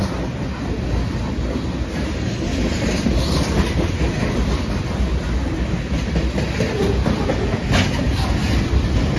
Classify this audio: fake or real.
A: real